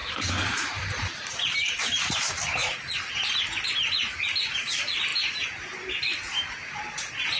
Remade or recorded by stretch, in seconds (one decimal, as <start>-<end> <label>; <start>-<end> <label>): 0.0-2.6 remade; 2.6-3.5 recorded; 3.5-7.4 remade